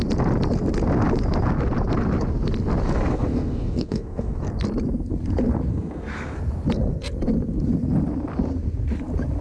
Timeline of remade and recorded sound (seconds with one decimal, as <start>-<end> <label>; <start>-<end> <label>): 0.0-3.1 recorded; 3.1-4.4 remade; 4.4-5.7 recorded; 5.7-6.4 remade; 6.4-9.4 recorded